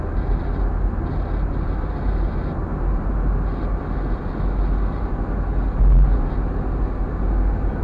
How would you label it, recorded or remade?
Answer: recorded